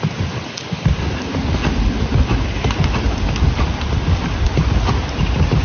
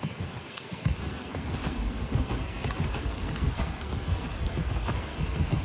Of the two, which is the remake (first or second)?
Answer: second